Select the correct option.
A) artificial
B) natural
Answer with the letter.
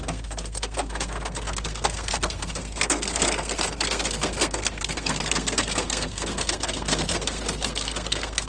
A